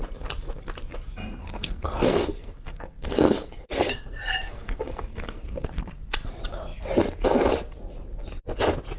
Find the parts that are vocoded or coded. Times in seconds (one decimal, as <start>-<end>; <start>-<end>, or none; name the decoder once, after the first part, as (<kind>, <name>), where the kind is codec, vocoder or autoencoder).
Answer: 1.4-5.8 (codec, SNAC)